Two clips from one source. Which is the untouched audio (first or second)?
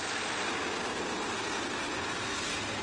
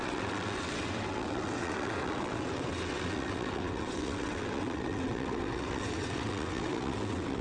first